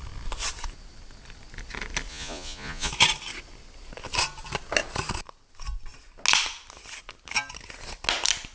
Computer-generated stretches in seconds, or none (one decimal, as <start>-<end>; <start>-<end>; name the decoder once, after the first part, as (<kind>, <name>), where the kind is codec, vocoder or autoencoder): 2.1-2.9 (vocoder, Vocos)